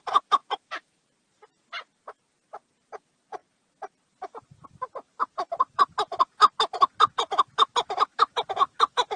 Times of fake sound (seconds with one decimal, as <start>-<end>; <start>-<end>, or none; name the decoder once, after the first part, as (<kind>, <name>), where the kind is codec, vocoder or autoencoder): none